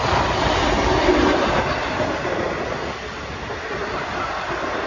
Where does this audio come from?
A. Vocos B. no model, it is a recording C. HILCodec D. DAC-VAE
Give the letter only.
B